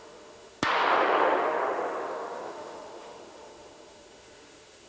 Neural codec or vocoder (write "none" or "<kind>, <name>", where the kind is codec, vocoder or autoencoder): autoencoder, DAC-VAE